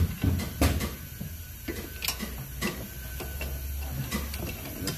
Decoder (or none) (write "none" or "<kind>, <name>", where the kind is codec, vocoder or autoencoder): none